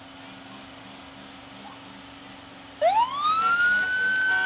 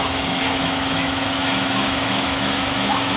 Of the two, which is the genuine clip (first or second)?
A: first